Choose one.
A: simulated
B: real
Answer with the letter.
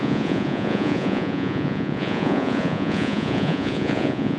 A